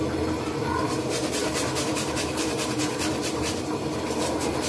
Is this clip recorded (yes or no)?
no